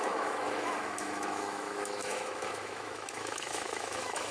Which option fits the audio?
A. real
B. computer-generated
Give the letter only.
B